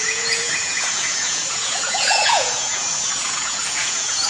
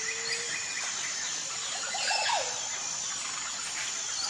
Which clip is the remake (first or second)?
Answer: first